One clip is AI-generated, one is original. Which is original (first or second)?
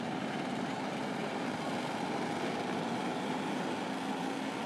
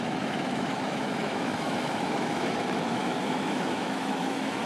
first